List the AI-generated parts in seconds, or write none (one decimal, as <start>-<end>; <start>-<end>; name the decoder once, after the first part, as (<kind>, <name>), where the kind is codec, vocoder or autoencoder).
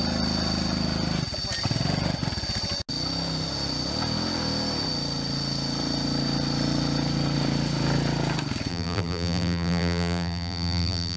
8.7-11.2 (vocoder, BigVGAN v2)